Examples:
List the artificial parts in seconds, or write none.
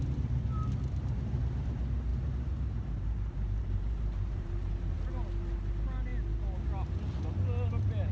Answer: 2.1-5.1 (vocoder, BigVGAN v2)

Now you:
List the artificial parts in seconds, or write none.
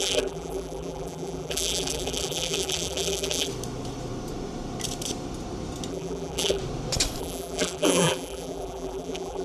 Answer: 0.0-3.5 (vocoder, BigVGAN v2); 5.9-6.6; 7.2-9.4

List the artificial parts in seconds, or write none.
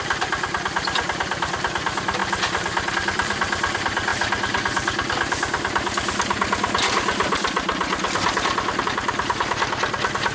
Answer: 0.0-2.2 (vocoder, BigVGAN v2); 2.9-4.1; 8.8-10.3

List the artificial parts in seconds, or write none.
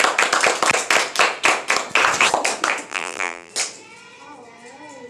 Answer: 2.9-3.5 (vocoder, BigVGAN v2)